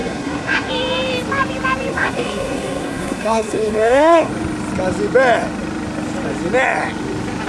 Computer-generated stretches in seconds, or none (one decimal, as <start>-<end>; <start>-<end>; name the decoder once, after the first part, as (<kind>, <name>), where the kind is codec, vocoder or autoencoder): 0.0-0.7 (codec, SNAC); 1.9-4.3